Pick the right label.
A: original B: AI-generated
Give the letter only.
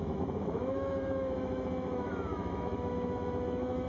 B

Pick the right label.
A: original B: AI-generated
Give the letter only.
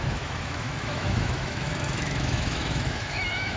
B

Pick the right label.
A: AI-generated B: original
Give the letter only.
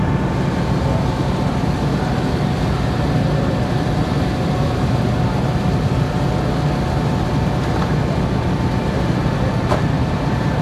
B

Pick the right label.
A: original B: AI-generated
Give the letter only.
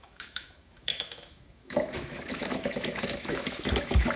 B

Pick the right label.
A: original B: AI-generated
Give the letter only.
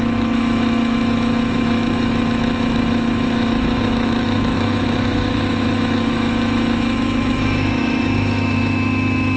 B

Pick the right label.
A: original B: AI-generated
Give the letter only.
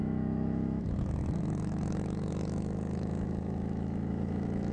B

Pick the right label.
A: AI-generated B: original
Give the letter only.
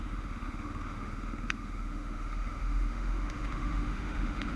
A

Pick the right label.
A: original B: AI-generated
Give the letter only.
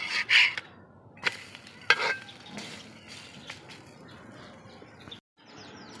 A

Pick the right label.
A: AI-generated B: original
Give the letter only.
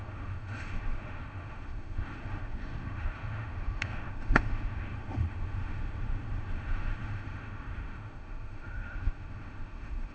A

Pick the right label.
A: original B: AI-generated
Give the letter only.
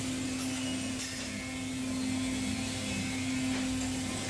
A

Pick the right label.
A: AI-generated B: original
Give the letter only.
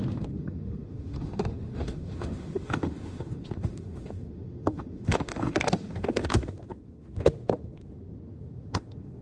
A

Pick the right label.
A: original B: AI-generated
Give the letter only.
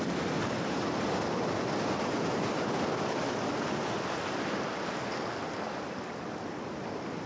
A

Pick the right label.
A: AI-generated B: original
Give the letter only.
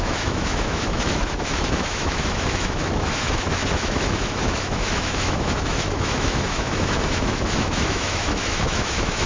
A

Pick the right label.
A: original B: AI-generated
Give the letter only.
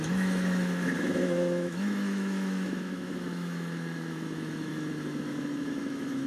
B